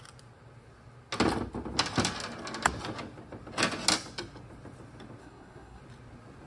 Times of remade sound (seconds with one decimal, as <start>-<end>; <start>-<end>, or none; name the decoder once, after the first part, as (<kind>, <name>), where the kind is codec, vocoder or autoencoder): 5.2-5.8 (codec, SNAC)